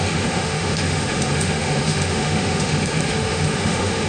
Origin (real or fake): fake